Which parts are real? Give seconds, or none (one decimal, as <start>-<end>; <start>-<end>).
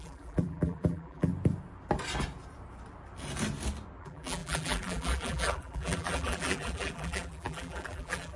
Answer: 1.3-4.0